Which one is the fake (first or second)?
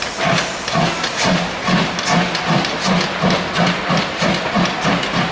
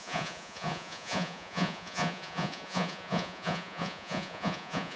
second